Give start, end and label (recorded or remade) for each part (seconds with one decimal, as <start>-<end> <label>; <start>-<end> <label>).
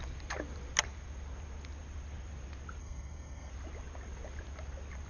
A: 0.0-2.8 recorded; 2.8-3.5 remade; 3.5-5.1 recorded